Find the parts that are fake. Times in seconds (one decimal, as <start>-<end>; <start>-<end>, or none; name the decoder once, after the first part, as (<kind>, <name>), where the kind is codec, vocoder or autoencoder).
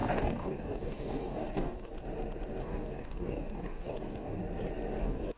0.0-1.9 (codec, DAC); 2.6-4.4; 5.0-5.4